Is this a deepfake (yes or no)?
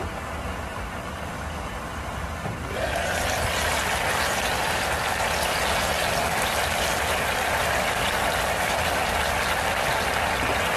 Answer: no